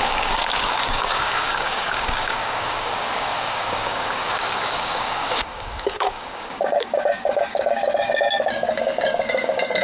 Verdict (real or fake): fake